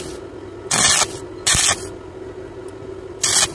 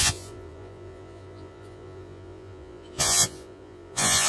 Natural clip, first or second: first